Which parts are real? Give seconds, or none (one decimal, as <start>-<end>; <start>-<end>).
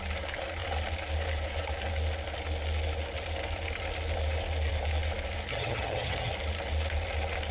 0.0-5.5; 6.3-7.5